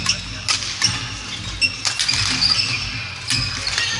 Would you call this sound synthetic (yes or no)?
no